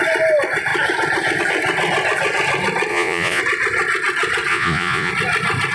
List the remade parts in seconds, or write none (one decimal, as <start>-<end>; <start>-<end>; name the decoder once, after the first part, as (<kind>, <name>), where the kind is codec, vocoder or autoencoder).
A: 2.9-3.4 (vocoder, Vocos); 4.5-5.1